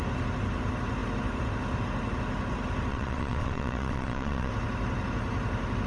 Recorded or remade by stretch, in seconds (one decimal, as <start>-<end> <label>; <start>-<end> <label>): 0.0-2.9 recorded; 2.9-4.5 remade; 4.5-5.9 recorded